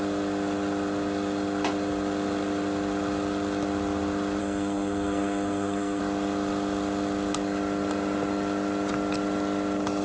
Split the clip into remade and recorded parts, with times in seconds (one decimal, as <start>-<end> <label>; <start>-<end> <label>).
0.0-4.4 recorded; 4.4-6.0 remade; 6.0-10.0 recorded